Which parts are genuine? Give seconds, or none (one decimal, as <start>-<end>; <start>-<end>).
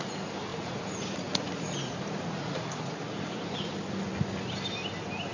0.0-0.5; 3.7-5.3